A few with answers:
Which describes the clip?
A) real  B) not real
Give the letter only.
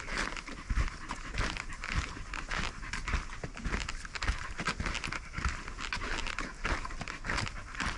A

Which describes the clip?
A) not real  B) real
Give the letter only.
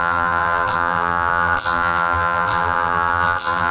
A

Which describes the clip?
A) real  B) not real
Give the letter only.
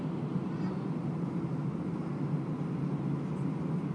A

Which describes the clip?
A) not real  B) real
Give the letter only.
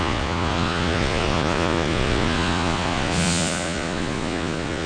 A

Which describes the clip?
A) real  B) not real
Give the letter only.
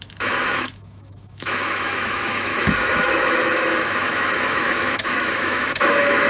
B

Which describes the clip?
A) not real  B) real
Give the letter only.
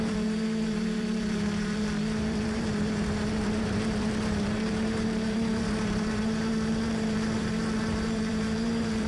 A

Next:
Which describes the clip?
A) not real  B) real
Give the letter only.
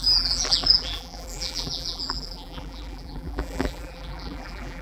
A